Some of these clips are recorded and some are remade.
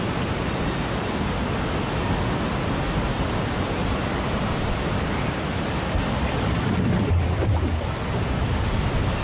recorded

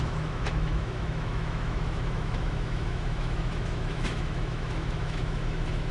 remade